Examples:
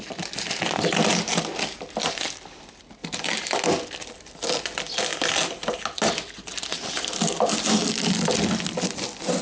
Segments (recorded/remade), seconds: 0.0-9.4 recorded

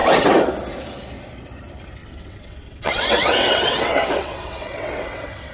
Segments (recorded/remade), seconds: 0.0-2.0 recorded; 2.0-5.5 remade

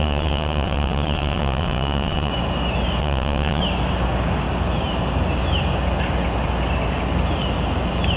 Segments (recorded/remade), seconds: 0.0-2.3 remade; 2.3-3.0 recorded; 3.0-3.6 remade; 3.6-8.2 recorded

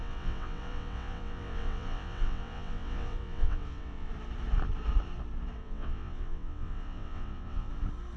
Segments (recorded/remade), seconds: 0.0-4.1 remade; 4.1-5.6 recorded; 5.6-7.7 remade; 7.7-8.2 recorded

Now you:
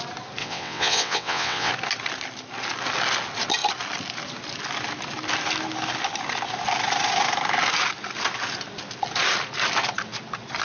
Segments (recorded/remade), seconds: 0.0-0.4 recorded; 0.4-1.7 remade; 1.7-10.6 recorded

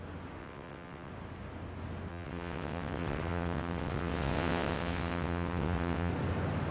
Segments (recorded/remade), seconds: 0.0-0.4 recorded; 0.4-1.1 remade; 1.1-2.1 recorded; 2.1-6.1 remade; 6.1-6.7 recorded